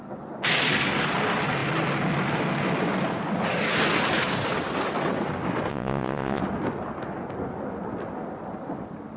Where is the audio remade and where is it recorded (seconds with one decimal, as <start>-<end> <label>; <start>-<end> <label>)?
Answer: 0.0-5.7 recorded; 5.7-6.4 remade; 6.4-9.2 recorded